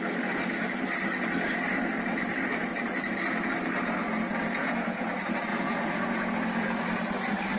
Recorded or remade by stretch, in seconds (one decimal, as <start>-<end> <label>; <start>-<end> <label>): 0.0-4.6 recorded; 4.6-5.1 remade; 5.1-5.5 recorded; 5.5-6.3 remade; 6.3-7.6 recorded